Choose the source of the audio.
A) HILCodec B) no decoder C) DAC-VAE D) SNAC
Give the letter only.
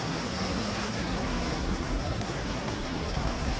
D